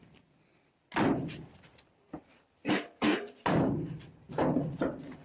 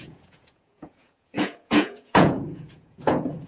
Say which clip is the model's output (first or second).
second